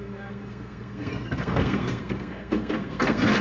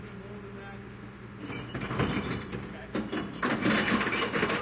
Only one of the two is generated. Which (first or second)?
first